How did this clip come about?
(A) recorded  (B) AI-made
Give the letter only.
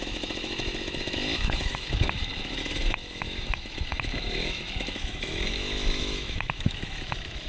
B